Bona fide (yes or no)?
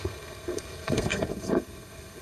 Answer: no